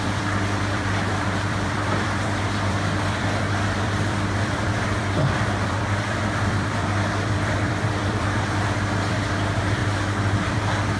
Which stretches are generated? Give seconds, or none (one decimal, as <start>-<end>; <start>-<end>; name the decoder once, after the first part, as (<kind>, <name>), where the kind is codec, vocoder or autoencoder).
0.0-9.8 (vocoder, BigVGAN v2); 10.5-11.0